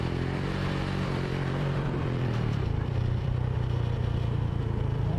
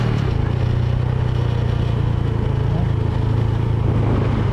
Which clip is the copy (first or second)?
first